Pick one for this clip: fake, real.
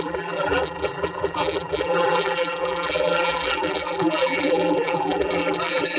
fake